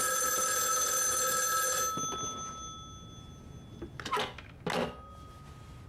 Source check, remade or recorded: recorded